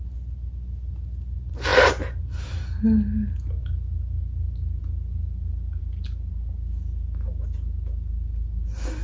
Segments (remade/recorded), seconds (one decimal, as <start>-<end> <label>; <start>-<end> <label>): 0.0-9.0 recorded

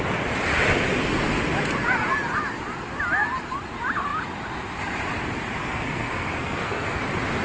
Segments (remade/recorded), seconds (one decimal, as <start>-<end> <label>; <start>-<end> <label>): 0.0-5.6 recorded; 5.6-7.0 remade; 7.0-7.4 recorded